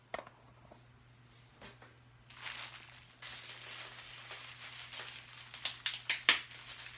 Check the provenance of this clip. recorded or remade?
recorded